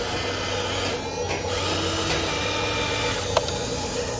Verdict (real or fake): real